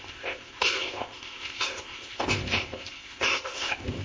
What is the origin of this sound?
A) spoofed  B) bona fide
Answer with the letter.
A